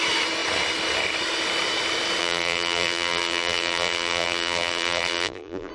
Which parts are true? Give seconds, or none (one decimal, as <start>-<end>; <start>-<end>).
0.0-2.2